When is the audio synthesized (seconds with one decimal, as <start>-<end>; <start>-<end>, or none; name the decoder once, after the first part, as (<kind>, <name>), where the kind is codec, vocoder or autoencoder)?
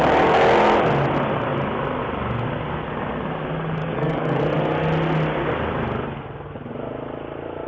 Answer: 3.8-4.4 (codec, DAC)